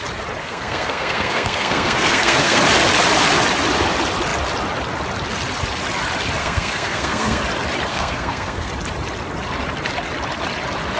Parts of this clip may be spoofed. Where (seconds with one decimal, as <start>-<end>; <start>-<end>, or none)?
0.4-2.6; 6.4-7.4; 7.9-8.7